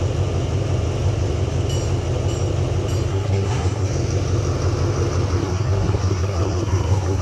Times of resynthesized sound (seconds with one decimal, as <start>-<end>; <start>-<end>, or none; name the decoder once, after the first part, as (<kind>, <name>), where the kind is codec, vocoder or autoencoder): 3.1-3.9 (codec, SNAC); 5.4-7.2